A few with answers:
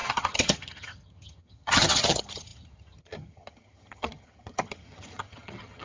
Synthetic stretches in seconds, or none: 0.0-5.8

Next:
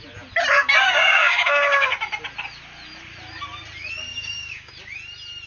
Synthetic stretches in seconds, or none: 0.6-1.9; 4.1-4.7

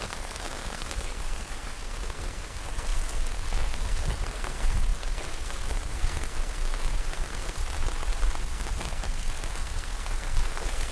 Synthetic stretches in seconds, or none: 0.0-7.6; 8.4-10.9

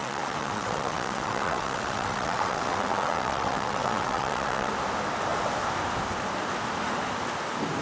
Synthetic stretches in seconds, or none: 0.0-4.7

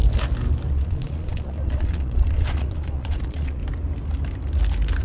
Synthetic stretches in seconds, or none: 0.7-3.6

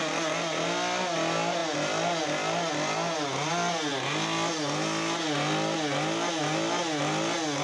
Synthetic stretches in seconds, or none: none

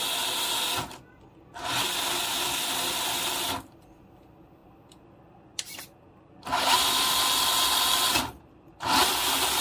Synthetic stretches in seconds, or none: none